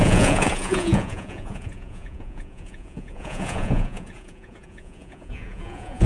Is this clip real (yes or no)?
no